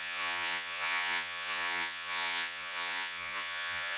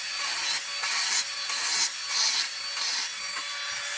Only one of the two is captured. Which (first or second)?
second